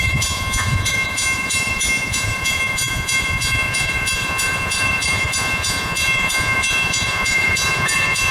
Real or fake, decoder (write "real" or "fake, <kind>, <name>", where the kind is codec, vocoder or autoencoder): fake, vocoder, Vocos